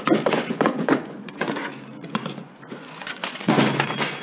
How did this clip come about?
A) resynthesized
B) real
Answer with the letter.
A